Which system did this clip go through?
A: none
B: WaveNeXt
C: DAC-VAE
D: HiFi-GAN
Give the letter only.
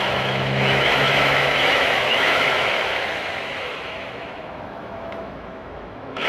C